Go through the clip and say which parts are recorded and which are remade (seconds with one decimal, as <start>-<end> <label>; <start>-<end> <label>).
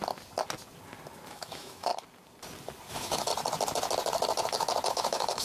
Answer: 0.0-1.3 recorded; 1.3-1.9 remade; 1.9-2.9 recorded; 2.9-3.3 remade; 3.3-4.9 recorded; 4.9-5.4 remade